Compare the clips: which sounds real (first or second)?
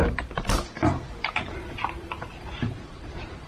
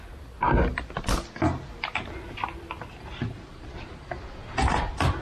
second